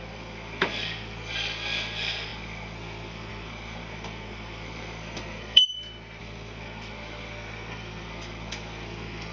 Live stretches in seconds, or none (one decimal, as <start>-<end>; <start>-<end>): 5.6-6.2

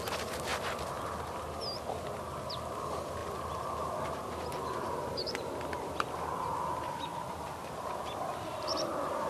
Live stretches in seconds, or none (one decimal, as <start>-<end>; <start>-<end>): 0.0-9.3

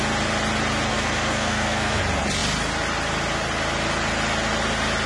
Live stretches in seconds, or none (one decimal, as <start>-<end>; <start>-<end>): 0.0-0.9; 2.0-5.1

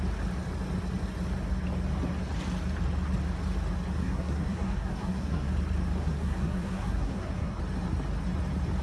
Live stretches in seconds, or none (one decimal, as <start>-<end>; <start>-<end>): 0.0-4.0; 5.5-6.0; 7.6-8.8